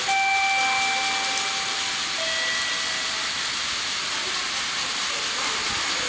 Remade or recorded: recorded